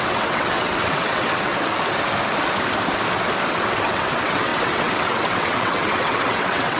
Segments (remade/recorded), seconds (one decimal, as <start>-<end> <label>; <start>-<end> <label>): 0.0-1.5 remade; 1.5-3.5 recorded; 3.5-6.8 remade